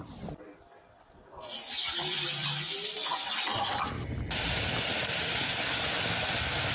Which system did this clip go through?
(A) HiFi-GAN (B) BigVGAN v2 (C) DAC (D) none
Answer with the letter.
D